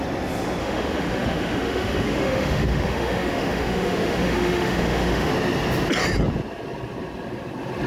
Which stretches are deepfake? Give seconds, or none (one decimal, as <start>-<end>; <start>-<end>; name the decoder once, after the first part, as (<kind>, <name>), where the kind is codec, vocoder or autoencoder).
0.6-5.3 (autoencoder, DAC-VAE)

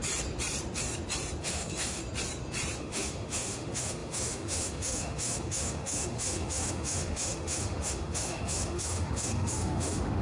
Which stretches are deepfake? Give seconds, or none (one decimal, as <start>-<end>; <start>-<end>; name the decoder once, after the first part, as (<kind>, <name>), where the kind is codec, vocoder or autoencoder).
1.4-2.0 (autoencoder, DAC-VAE); 2.8-10.2

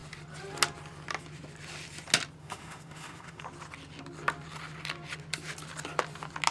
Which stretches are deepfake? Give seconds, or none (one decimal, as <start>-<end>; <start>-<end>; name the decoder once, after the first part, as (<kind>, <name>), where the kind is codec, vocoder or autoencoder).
2.4-3.4 (autoencoder, DAC-VAE)

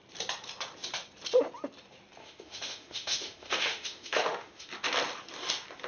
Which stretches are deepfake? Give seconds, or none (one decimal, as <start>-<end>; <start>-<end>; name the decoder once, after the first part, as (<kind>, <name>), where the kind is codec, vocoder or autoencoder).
2.2-4.7 (autoencoder, DAC-VAE)